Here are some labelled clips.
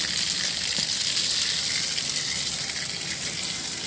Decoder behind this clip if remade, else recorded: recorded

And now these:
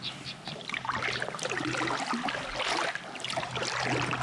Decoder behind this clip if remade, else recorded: recorded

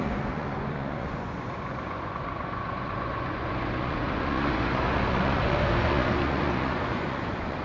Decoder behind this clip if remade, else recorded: remade, vocoder, Vocos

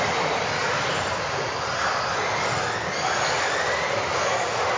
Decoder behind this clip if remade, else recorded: recorded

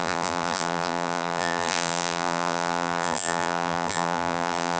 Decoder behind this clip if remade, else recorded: remade, vocoder, BigVGAN v2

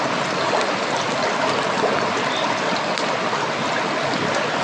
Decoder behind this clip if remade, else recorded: recorded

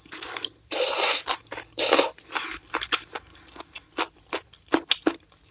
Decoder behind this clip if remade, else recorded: recorded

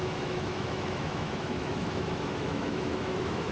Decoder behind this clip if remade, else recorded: remade, autoencoder, DAC-VAE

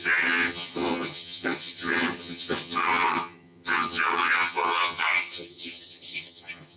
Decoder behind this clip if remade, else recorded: remade, vocoder, HiFi-GAN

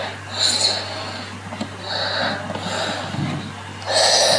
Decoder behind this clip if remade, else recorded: recorded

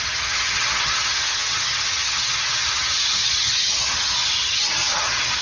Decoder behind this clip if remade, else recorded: remade, vocoder, HiFi-GAN